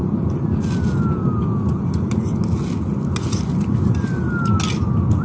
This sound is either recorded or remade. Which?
recorded